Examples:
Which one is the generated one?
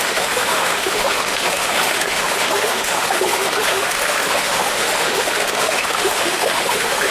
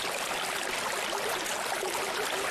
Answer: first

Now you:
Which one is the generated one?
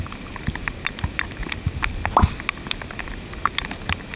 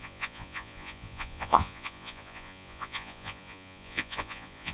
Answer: second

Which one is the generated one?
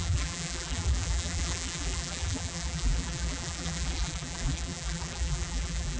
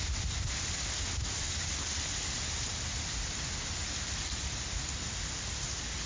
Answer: first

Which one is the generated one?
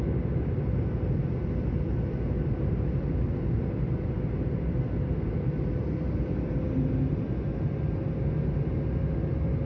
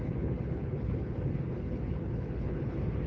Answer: second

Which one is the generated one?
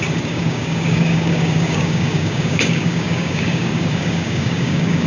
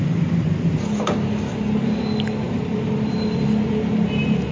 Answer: first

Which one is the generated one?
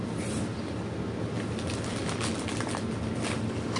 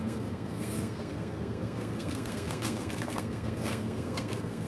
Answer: second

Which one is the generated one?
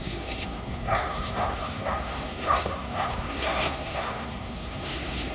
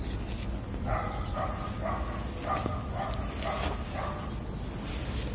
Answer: first